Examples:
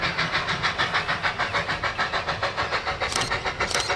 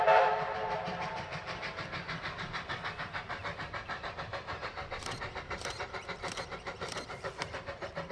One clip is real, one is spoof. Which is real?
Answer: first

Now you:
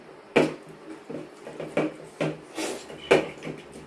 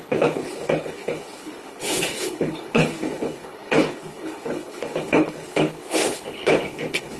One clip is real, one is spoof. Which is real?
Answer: first